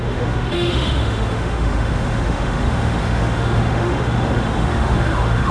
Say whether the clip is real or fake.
fake